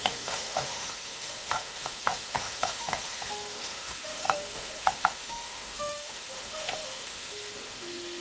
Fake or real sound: fake